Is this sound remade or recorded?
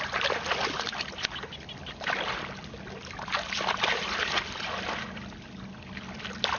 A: recorded